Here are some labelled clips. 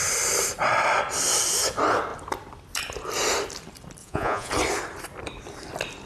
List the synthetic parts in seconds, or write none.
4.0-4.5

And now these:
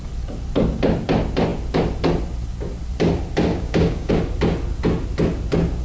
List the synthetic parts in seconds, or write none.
3.5-4.1

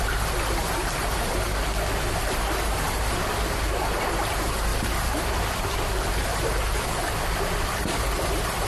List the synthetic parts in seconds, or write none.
4.7-8.7

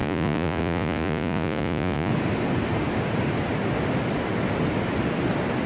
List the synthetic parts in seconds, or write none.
0.0-2.1